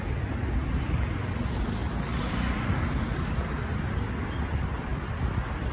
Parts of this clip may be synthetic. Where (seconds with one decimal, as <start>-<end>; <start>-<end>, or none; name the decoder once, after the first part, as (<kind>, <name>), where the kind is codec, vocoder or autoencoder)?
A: none